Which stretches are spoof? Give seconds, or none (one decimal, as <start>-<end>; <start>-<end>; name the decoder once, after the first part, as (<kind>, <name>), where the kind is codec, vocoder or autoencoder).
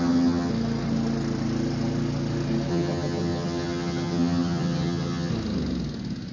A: 0.0-0.5 (vocoder, HiFi-GAN); 2.7-5.3